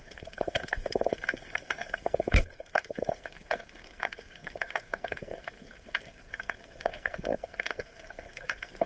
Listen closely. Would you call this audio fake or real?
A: fake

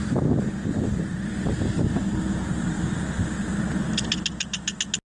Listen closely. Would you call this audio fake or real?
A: real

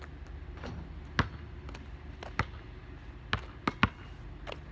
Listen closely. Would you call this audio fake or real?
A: real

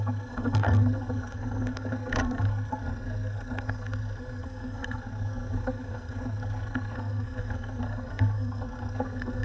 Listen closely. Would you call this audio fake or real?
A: fake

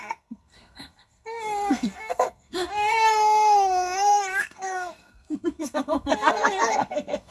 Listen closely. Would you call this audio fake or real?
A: fake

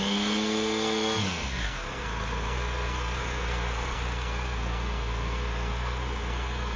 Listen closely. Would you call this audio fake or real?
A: fake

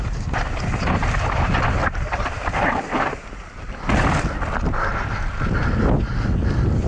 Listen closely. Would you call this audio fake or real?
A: real